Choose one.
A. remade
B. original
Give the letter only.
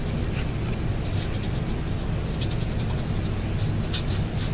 B